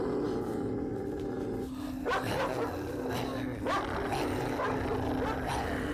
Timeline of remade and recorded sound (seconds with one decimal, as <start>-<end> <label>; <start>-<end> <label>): 0.0-5.9 recorded